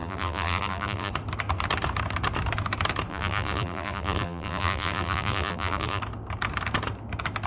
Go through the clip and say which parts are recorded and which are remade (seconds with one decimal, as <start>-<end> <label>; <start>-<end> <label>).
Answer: 0.0-1.1 remade; 1.1-3.1 recorded; 3.1-6.0 remade; 6.0-7.5 recorded